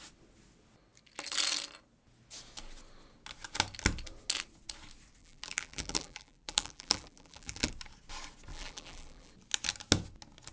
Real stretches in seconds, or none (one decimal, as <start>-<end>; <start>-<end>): 0.0-5.2; 7.7-8.5; 9.3-10.5